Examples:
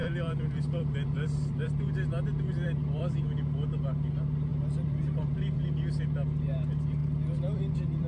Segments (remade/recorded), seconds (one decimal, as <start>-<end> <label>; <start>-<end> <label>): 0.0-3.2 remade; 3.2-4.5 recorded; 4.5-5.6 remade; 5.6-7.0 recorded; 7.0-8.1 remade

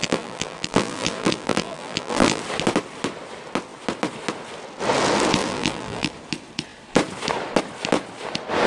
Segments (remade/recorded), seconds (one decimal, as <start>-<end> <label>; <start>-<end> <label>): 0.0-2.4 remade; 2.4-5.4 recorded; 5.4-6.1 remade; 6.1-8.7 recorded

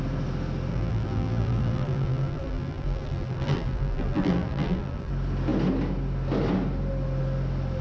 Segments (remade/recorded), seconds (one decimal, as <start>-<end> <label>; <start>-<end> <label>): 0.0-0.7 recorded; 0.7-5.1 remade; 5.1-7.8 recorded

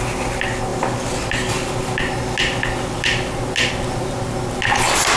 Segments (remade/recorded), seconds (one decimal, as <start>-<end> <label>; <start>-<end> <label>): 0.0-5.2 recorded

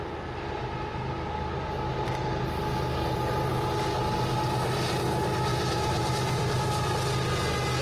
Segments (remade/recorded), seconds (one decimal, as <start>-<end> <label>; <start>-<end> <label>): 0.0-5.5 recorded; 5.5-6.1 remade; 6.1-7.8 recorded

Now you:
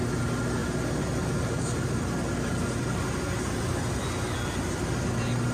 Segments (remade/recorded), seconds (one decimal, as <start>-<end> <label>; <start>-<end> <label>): 0.0-5.5 recorded

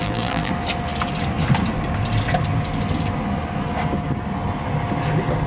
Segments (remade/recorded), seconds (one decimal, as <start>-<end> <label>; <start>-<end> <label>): 0.0-0.5 remade; 0.5-5.5 recorded